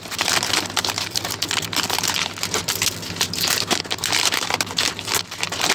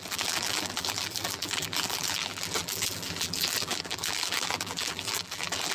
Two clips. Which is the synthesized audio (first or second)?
second